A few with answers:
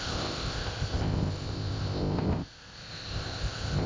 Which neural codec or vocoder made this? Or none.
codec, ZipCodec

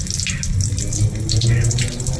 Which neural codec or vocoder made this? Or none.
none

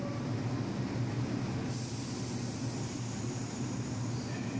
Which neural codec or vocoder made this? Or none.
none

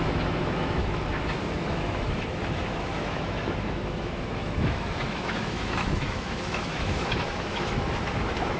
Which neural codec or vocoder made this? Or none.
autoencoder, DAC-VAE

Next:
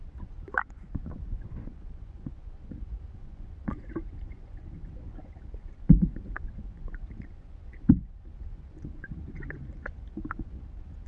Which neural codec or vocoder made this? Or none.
vocoder, Vocos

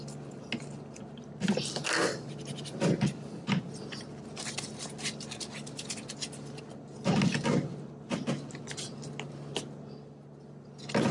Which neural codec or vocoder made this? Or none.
none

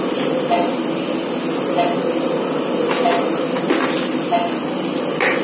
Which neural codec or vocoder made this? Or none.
none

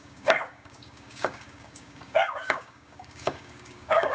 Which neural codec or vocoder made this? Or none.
codec, DAC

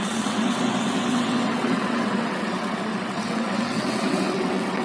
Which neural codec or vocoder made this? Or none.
vocoder, WaveNeXt